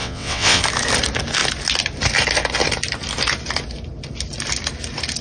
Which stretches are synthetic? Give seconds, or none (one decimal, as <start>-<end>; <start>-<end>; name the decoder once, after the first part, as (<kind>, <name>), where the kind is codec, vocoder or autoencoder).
0.0-0.6 (vocoder, WaveNeXt)